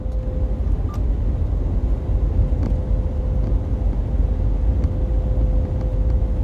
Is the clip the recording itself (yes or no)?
yes